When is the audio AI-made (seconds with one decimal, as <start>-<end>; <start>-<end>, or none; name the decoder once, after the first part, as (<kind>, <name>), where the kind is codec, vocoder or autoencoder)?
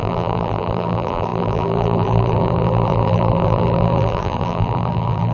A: 0.0-5.3 (vocoder, BigVGAN v2)